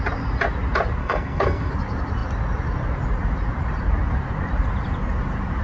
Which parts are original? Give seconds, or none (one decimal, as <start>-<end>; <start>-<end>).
0.0-1.0; 1.7-5.6